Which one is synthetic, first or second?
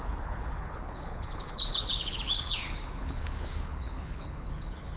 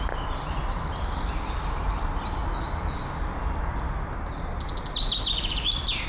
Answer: first